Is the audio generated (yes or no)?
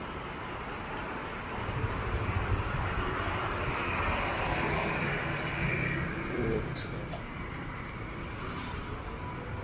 yes